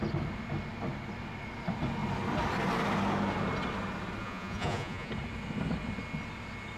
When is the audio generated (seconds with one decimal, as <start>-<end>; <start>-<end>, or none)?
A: 4.2-5.1